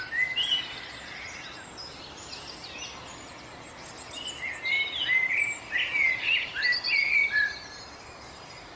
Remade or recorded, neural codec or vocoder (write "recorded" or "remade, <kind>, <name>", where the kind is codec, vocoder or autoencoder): recorded